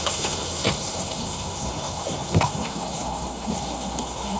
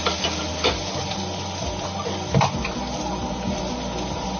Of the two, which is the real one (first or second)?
second